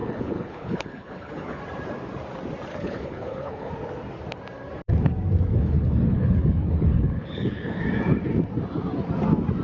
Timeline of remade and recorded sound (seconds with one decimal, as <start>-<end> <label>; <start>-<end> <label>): 0.0-1.6 remade; 1.6-2.7 recorded; 2.7-3.7 remade; 3.7-5.5 recorded; 5.5-7.8 remade; 7.8-9.6 recorded